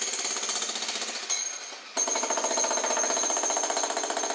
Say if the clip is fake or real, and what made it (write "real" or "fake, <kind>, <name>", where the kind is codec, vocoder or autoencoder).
real